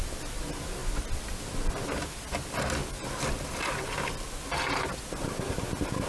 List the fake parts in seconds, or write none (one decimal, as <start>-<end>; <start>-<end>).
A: none